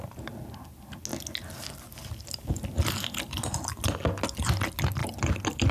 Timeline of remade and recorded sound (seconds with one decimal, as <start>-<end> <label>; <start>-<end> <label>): 0.0-5.7 recorded